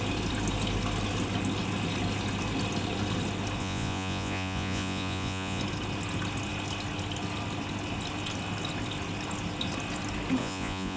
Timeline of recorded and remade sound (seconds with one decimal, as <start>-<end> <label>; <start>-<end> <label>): 0.0-3.6 recorded; 3.6-5.6 remade; 5.6-10.4 recorded; 10.4-11.0 remade